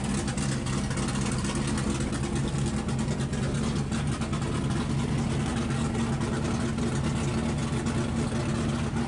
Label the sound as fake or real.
real